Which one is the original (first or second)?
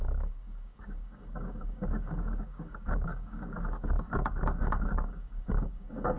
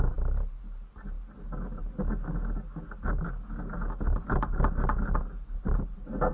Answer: second